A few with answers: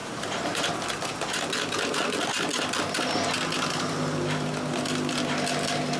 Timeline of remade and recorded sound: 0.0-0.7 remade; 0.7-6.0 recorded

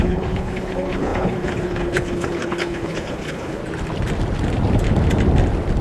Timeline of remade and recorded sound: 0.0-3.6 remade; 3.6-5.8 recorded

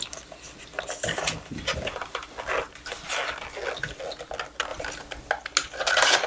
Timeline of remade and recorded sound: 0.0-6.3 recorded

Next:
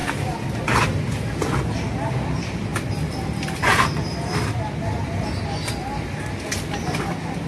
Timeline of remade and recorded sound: 0.0-7.5 recorded

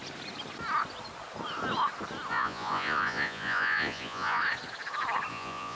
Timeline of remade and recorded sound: 0.0-2.3 recorded; 2.3-4.4 remade; 4.4-5.3 recorded; 5.3-5.8 remade

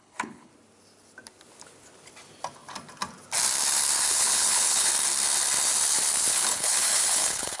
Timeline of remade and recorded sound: 0.0-0.5 remade; 0.5-4.1 recorded; 4.1-4.9 remade; 4.9-6.3 recorded; 6.3-7.6 remade

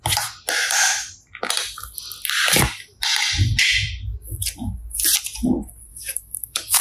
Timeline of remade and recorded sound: 0.0-5.9 recorded; 5.9-6.8 remade

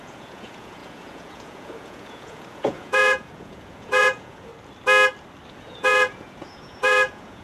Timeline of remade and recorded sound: 0.0-4.5 remade; 4.5-5.5 recorded; 5.5-7.4 remade